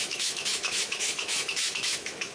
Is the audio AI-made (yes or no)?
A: yes